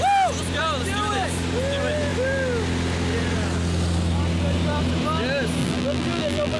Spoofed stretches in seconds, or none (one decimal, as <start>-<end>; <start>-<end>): 5.6-6.6